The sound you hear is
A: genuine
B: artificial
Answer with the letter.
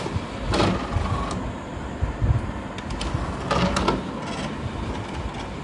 A